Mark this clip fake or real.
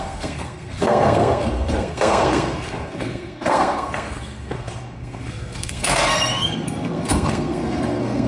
fake